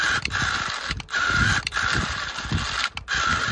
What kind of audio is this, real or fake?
real